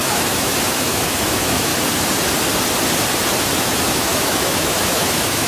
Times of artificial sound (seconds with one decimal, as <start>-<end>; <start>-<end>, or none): 0.0-1.7; 3.6-5.5